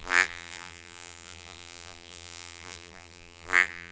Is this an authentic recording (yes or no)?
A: no